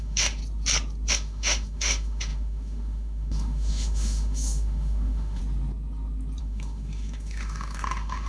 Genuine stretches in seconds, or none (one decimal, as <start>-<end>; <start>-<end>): 0.4-1.1; 5.4-6.4